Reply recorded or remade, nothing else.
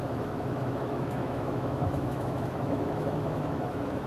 remade